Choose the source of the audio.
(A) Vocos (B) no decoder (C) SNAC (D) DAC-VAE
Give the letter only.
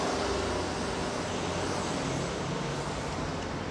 B